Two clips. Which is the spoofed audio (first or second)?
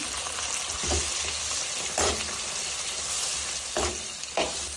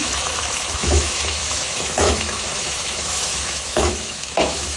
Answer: second